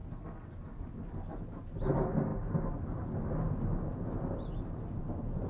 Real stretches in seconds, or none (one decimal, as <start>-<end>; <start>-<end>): 0.0-5.5